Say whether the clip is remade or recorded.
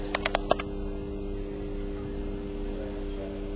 recorded